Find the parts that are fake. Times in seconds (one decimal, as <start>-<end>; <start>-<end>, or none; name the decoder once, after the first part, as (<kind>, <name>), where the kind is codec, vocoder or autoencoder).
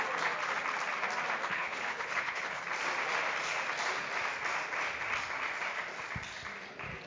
1.5-2.6 (codec, HILCodec)